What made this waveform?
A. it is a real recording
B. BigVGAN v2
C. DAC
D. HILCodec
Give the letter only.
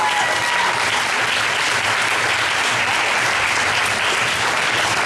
A